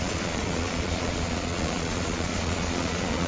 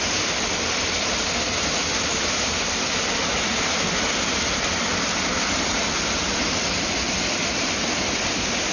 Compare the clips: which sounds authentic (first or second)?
second